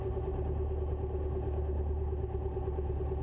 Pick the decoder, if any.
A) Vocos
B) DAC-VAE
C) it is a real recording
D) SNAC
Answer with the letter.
C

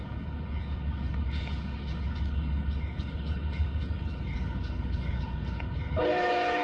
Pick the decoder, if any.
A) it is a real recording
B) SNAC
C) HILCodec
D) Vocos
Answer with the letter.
C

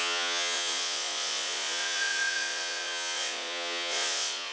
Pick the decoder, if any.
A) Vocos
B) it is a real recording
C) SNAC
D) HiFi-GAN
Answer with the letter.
A